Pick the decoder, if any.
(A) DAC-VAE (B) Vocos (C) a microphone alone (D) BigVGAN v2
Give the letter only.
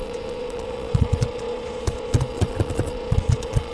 B